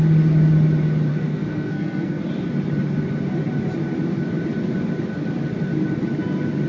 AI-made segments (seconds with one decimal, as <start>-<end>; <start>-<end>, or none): 1.1-2.2